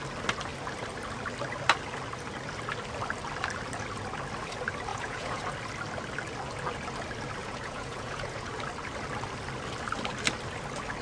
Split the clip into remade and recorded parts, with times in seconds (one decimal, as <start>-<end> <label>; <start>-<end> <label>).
0.0-4.9 recorded; 4.9-5.4 remade; 5.4-7.4 recorded; 7.4-8.5 remade; 8.5-11.0 recorded